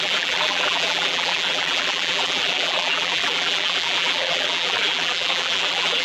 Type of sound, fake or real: fake